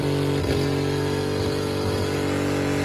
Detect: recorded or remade recorded